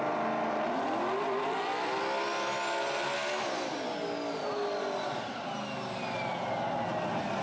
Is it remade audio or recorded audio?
recorded